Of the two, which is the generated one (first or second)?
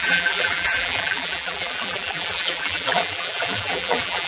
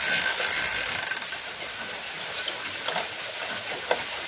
first